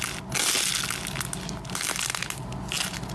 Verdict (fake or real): real